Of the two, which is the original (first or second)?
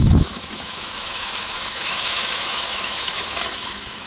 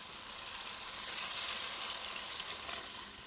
second